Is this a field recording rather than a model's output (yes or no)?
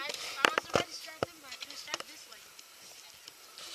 yes